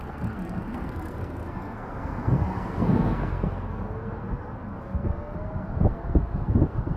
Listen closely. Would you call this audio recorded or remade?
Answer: remade